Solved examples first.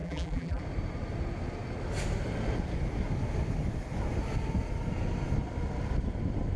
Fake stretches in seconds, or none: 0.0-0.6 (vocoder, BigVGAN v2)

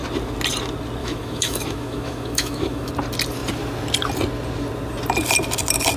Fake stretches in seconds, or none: 1.0-2.9 (autoencoder, DAC-VAE)